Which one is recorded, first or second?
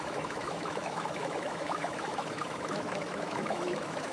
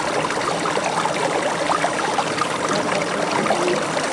second